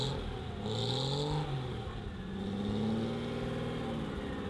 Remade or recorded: recorded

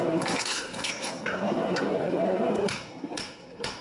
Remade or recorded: remade